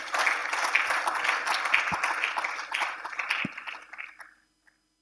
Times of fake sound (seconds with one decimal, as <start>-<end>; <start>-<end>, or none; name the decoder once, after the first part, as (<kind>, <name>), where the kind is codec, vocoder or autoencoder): none

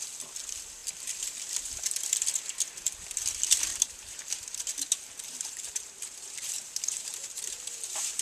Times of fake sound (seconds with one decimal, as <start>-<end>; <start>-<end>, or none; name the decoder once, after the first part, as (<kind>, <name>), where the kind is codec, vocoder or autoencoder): 3.7-8.2 (vocoder, BigVGAN v2)

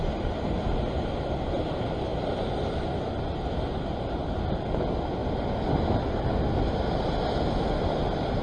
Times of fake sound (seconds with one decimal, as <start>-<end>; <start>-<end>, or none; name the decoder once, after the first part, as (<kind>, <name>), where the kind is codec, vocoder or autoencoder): none

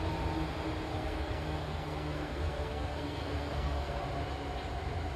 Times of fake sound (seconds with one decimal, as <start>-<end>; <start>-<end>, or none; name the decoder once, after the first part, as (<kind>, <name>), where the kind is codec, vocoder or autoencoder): 0.9-4.0 (codec, SNAC)

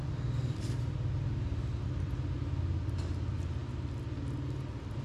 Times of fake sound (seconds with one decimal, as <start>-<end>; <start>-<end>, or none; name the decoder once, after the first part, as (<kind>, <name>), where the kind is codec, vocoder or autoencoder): none

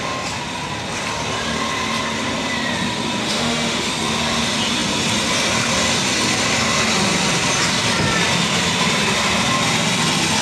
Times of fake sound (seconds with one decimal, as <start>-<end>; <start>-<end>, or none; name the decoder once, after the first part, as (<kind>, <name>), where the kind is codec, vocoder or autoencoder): 3.2-3.9 (autoencoder, DAC-VAE)

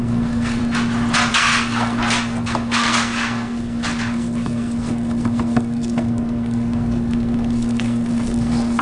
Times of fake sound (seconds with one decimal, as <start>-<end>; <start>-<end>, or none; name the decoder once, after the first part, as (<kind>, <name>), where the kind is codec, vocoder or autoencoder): 0.0-0.6 (codec, SNAC); 1.3-8.8